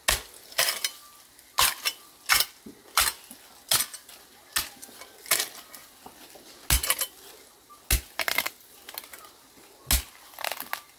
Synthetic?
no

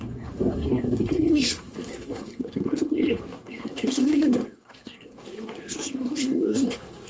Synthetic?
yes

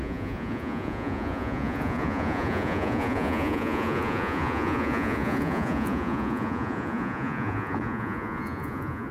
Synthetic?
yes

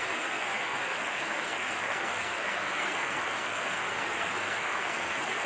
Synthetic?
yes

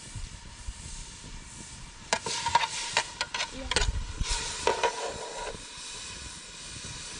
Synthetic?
no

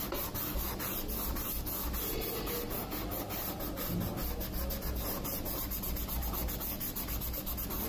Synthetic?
no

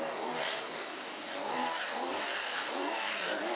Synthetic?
yes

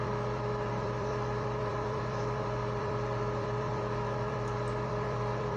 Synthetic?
yes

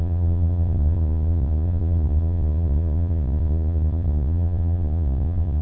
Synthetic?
yes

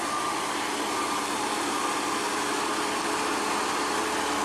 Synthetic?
no